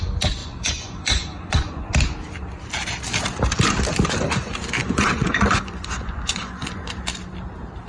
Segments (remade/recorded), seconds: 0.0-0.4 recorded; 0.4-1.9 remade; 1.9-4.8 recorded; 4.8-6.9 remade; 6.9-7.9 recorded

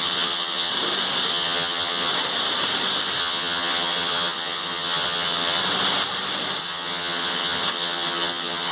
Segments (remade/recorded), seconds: 0.0-0.7 remade; 0.7-1.3 recorded; 1.3-2.1 remade; 2.1-3.2 recorded; 3.2-5.6 remade; 5.6-6.6 recorded; 6.6-8.7 remade

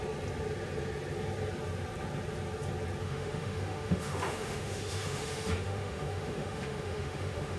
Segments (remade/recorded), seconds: 0.0-3.0 recorded; 3.0-7.6 remade

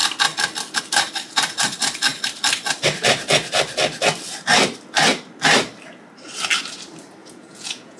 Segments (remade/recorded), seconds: 0.0-7.2 recorded; 7.2-8.0 remade

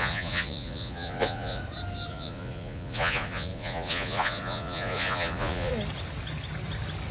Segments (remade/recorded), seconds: 0.0-1.6 remade; 1.6-2.1 recorded; 2.1-5.7 remade; 5.7-7.1 recorded